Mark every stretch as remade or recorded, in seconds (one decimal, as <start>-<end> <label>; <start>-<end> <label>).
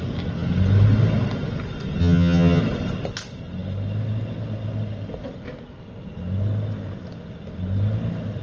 0.0-2.0 recorded; 2.0-2.6 remade; 2.6-8.4 recorded